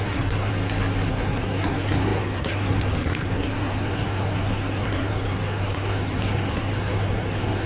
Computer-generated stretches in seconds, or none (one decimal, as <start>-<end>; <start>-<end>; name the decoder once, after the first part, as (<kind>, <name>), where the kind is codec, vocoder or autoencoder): 0.0-0.5 (codec, SNAC); 1.1-7.7